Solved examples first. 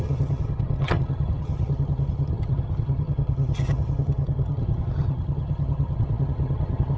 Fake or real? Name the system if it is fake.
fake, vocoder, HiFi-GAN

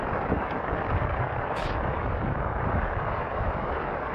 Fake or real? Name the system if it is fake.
fake, codec, DAC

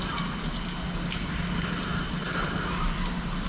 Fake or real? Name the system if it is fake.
real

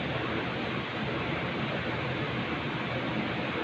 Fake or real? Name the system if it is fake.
real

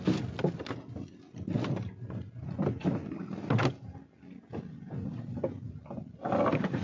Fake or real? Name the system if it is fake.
real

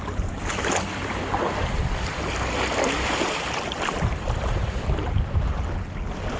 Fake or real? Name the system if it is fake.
real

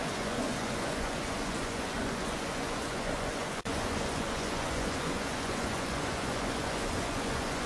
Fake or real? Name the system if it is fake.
fake, vocoder, Vocos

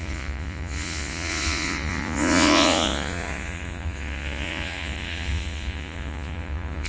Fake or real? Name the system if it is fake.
fake, vocoder, Vocos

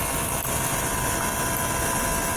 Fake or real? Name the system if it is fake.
real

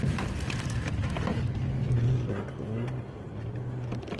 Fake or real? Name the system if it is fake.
real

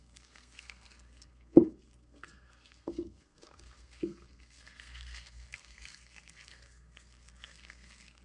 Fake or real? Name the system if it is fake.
fake, codec, SNAC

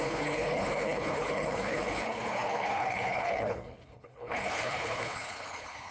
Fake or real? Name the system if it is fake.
fake, codec, HILCodec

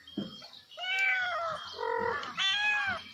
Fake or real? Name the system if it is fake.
real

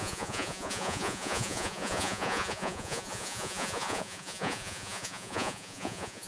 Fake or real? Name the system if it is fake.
fake, vocoder, Vocos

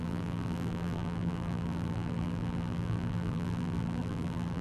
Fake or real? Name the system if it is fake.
fake, vocoder, BigVGAN v2